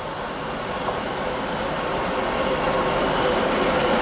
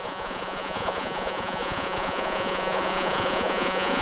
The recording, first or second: first